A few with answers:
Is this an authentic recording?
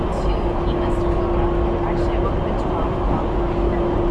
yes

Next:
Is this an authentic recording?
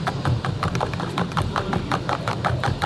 no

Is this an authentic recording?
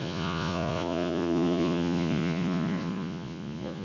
no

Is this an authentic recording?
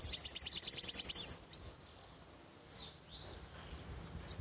yes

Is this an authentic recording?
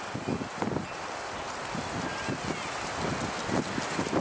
yes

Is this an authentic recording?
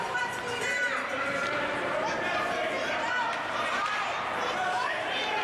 no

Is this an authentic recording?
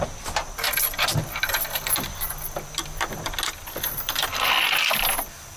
yes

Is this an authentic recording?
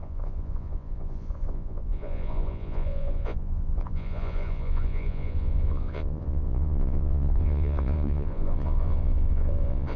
no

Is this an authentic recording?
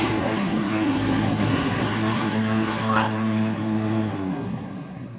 no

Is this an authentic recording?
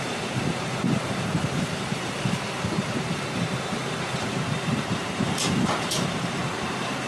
no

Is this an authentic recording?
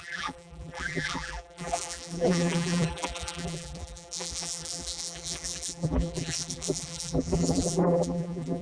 no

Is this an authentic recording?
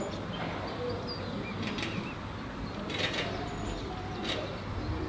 yes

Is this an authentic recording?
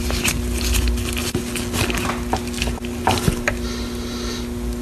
yes